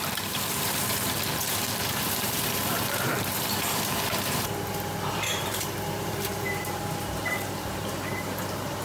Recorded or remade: remade